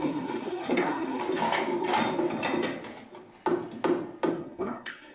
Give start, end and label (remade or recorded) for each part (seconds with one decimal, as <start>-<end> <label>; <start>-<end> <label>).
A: 0.0-1.2 remade; 1.2-4.3 recorded; 4.3-5.1 remade